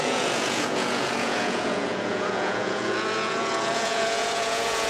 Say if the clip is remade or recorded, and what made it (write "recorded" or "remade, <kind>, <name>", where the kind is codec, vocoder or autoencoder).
remade, vocoder, Vocos